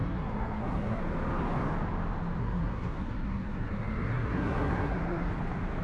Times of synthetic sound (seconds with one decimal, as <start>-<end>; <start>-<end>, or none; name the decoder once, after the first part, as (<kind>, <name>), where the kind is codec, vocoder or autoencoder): 0.0-1.0 (codec, SNAC); 2.4-5.3